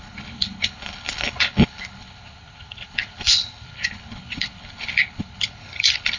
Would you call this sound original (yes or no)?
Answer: no